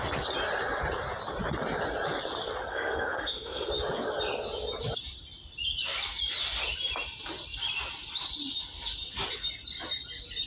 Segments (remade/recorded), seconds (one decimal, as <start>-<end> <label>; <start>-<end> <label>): 0.0-2.7 recorded; 2.7-3.7 remade; 3.7-10.5 recorded